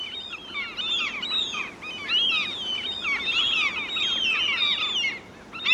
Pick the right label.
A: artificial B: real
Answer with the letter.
B